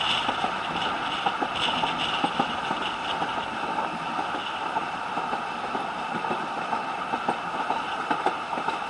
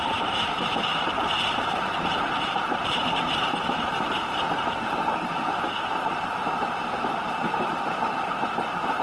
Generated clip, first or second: second